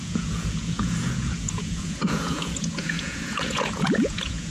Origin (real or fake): fake